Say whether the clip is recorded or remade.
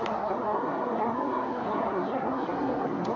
remade